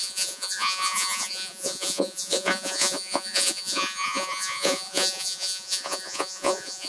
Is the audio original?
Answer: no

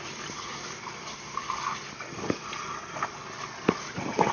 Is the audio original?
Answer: yes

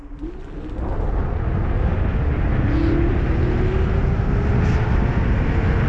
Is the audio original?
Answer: yes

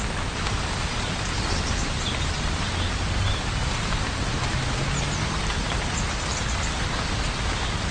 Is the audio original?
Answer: yes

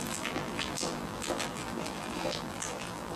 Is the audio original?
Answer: no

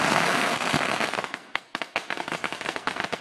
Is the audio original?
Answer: no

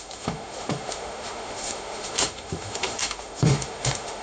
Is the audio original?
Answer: no